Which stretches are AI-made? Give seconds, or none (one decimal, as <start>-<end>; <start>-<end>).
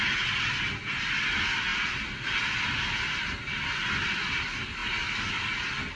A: none